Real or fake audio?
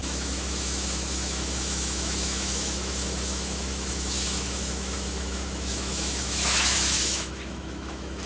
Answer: fake